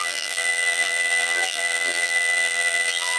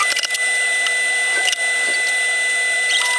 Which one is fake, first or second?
first